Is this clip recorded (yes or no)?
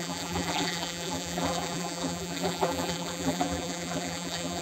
no